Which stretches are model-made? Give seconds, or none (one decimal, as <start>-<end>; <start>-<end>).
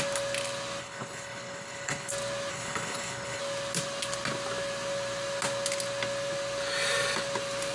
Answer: 0.8-2.1; 2.5-3.4